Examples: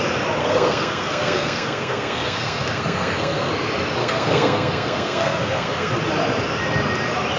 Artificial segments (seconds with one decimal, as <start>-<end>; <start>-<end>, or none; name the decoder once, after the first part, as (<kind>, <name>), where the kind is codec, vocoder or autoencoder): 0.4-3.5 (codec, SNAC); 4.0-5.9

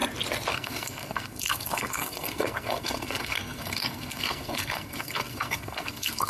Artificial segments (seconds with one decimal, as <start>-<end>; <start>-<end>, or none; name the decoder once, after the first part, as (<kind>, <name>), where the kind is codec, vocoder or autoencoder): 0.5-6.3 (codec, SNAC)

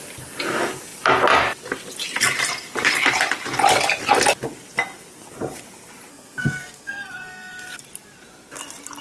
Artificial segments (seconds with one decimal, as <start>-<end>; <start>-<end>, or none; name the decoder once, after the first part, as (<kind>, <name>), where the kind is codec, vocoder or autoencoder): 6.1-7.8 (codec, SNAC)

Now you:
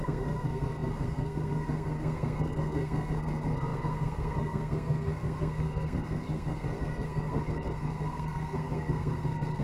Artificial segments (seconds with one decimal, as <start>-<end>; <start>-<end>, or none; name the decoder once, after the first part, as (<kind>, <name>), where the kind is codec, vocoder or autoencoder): 0.0-9.6 (codec, SNAC)

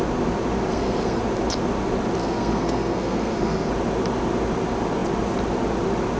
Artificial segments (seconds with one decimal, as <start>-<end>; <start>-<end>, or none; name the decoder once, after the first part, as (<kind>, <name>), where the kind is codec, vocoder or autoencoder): 0.7-1.2 (codec, SNAC); 2.2-3.7

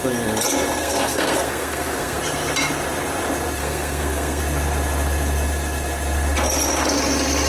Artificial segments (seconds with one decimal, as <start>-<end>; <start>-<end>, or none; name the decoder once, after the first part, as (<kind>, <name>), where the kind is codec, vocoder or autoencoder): 0.8-2.2 (codec, SNAC); 3.6-4.4